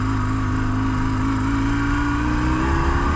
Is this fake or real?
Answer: real